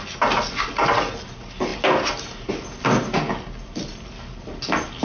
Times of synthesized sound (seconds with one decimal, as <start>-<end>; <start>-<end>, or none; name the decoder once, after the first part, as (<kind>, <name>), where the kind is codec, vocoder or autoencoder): none